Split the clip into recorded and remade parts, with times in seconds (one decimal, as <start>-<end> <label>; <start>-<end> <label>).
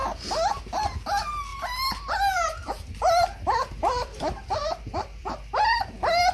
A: 0.0-1.5 recorded; 1.5-5.3 remade; 5.3-6.3 recorded